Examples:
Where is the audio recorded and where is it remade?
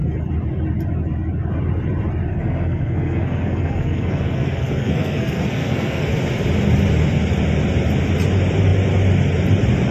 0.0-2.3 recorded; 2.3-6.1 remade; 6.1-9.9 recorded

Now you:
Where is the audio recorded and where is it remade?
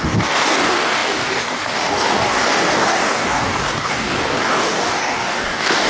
0.0-5.9 remade